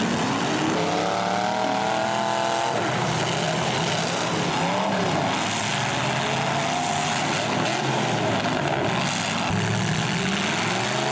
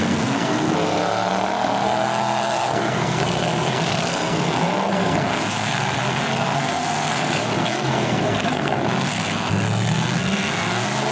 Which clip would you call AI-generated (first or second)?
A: second